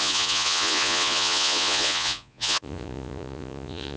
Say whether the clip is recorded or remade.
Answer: remade